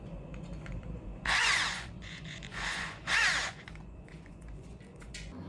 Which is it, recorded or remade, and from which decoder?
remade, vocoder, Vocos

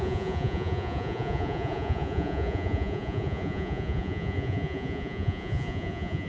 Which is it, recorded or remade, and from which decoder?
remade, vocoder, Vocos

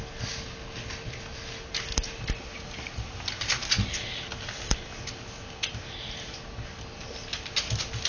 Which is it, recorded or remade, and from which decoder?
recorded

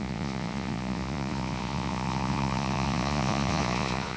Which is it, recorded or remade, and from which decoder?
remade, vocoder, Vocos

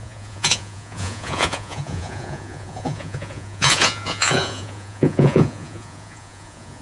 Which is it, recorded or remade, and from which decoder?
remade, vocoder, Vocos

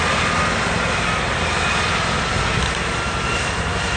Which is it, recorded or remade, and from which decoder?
recorded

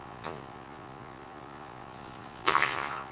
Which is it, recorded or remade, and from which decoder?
remade, vocoder, Vocos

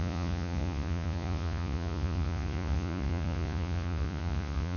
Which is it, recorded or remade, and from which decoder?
remade, vocoder, Vocos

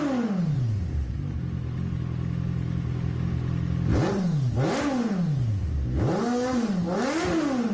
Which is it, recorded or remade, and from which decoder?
recorded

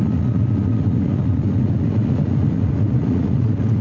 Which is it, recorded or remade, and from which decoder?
remade, vocoder, Vocos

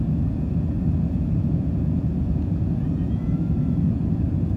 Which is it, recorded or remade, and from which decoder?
remade, vocoder, Vocos